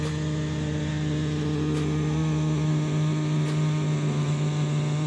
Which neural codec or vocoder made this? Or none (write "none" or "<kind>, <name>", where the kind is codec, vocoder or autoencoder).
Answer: none